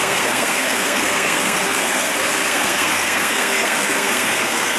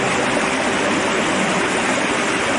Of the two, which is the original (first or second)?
second